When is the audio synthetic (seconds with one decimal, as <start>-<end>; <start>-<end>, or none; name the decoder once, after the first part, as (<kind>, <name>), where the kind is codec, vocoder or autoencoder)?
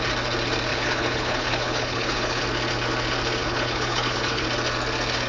0.7-2.4 (codec, HILCodec); 3.4-4.4